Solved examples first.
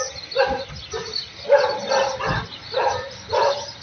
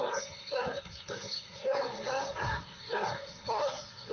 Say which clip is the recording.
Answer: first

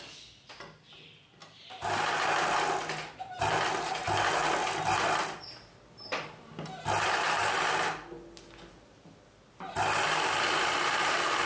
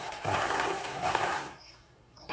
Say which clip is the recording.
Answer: first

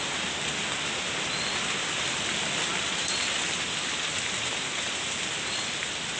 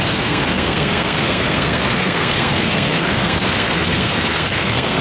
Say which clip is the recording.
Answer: first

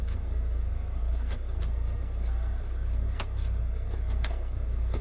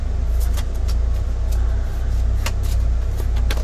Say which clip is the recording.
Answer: second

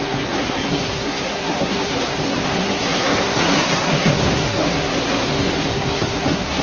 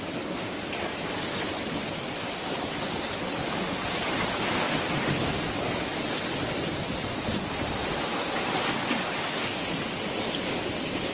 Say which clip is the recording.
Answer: second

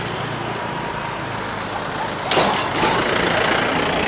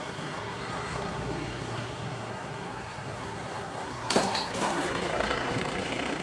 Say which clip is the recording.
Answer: first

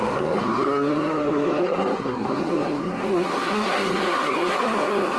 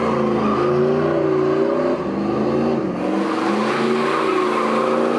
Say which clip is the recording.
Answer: second